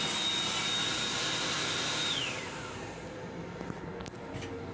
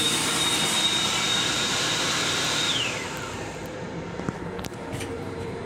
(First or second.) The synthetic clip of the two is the second